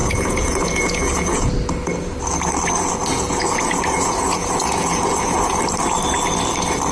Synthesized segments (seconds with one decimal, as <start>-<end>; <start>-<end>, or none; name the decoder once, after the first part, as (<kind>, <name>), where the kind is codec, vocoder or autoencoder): 0.0-1.5 (vocoder, Vocos); 3.1-5.5